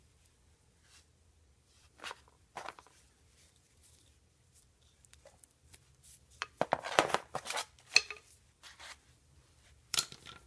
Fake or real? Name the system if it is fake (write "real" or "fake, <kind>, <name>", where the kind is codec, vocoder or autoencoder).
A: fake, vocoder, BigVGAN v2